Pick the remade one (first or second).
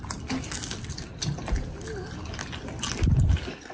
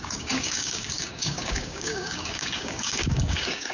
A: second